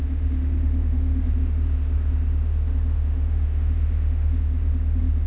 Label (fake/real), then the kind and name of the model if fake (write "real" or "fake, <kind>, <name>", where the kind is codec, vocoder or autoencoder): fake, autoencoder, DAC-VAE